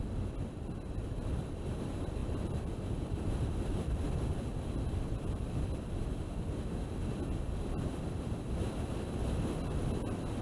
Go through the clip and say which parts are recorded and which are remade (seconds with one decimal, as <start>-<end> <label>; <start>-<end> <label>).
0.0-2.2 recorded; 2.2-5.9 remade; 5.9-10.4 recorded